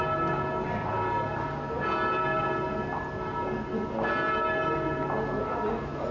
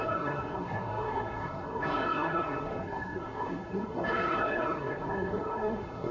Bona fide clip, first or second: first